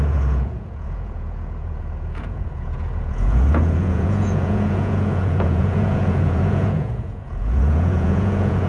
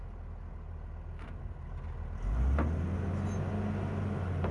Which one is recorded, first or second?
second